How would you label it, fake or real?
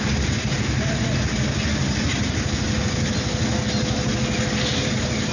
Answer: real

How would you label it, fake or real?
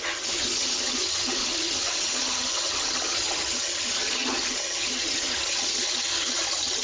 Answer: fake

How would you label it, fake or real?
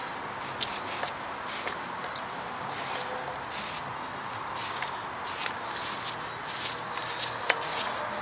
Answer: real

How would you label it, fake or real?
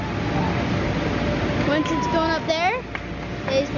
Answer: real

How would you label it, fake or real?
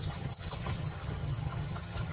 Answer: fake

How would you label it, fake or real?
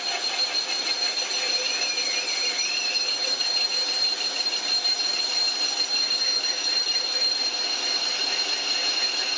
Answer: real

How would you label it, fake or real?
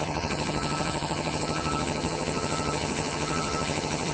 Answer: fake